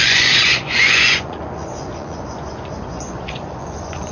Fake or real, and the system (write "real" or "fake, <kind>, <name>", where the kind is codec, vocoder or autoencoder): fake, vocoder, Vocos